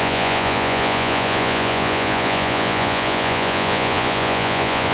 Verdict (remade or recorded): remade